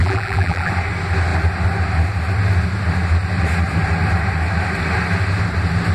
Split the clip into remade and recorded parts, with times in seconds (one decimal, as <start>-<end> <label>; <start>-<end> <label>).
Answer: 0.0-0.7 remade; 0.7-5.9 recorded